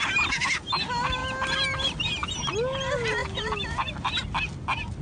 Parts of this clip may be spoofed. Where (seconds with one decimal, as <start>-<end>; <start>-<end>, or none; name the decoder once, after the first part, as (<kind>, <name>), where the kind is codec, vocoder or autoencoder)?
none